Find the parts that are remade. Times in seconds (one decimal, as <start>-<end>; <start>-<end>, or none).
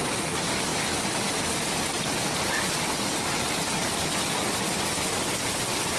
none